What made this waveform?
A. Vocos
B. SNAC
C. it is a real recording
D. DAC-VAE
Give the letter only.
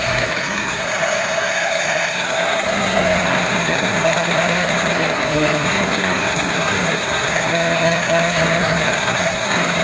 B